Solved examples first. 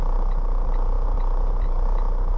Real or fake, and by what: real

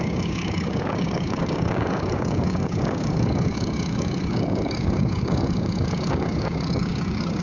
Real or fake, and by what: fake, codec, DAC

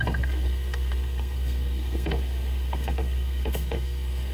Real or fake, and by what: fake, codec, SNAC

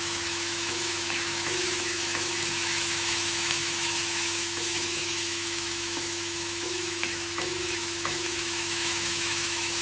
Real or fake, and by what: fake, autoencoder, DAC-VAE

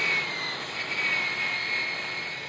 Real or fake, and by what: real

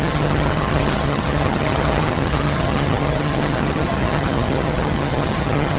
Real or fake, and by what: fake, vocoder, HiFi-GAN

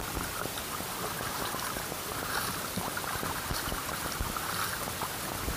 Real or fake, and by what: real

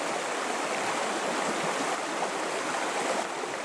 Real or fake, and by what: real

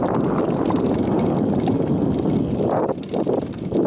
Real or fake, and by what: real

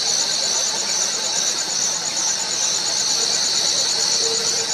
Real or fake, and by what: real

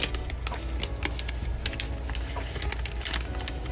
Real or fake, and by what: real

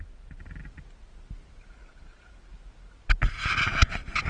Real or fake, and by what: real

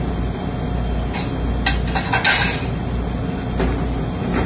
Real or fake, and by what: real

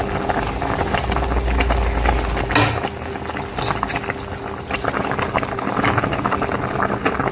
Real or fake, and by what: real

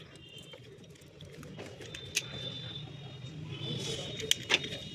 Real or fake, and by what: real